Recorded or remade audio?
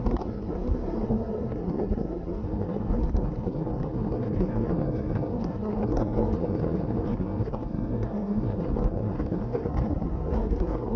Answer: remade